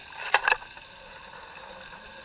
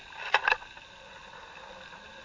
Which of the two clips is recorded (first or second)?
second